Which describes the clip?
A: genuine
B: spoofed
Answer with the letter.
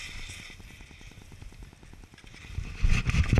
A